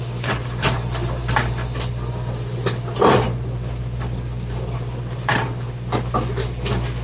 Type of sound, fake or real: real